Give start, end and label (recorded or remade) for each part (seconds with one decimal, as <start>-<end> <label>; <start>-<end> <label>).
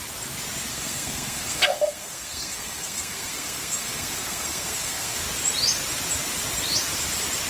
0.0-0.7 recorded; 0.7-5.2 remade; 5.2-7.5 recorded